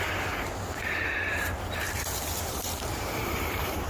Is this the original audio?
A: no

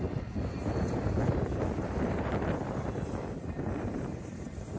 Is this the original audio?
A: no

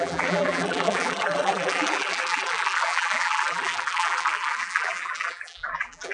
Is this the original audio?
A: no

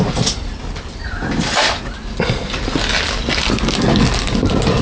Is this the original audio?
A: yes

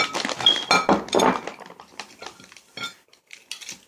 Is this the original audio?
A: yes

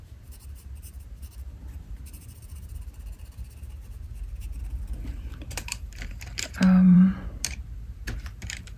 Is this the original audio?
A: no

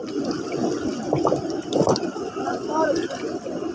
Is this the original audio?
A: yes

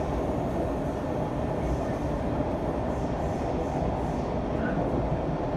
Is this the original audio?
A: yes